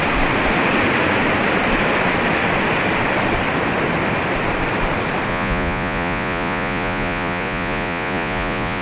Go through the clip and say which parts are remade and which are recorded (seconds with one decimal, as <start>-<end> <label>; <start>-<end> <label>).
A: 0.0-5.3 recorded; 5.3-8.8 remade